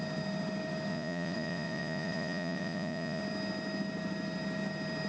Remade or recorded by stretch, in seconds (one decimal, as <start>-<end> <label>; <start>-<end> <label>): 0.0-0.9 recorded; 0.9-3.2 remade; 3.2-5.1 recorded